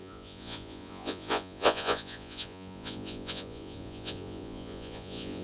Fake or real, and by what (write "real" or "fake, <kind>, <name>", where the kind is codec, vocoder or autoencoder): fake, vocoder, Vocos